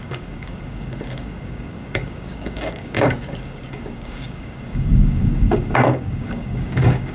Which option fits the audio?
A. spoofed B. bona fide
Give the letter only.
A